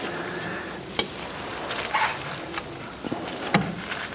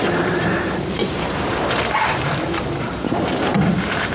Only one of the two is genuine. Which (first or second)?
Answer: first